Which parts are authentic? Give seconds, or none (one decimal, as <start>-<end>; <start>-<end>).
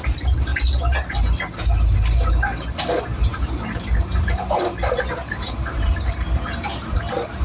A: 0.5-2.8